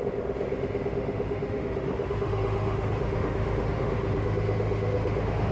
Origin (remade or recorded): remade